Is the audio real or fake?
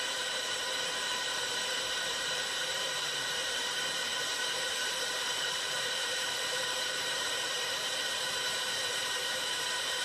fake